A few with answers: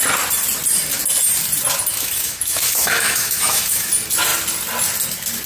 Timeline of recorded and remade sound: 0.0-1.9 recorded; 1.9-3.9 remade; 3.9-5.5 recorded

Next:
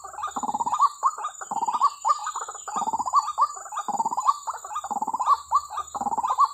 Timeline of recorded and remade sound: 0.0-6.5 recorded

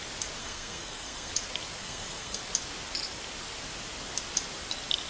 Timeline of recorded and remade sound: 0.0-0.4 recorded; 0.4-1.3 remade; 1.3-1.8 recorded; 1.8-2.4 remade; 2.4-5.1 recorded

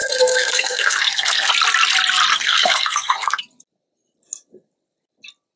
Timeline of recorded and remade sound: 0.0-1.5 remade; 1.5-2.3 recorded; 2.3-3.4 remade; 3.4-5.6 recorded

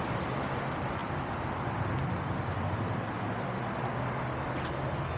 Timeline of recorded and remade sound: 0.0-5.2 recorded

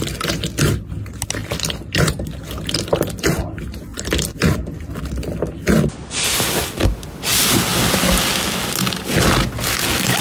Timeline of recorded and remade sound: 0.0-1.4 recorded; 1.4-2.1 remade; 2.1-3.9 recorded; 3.9-5.0 remade; 5.0-10.2 recorded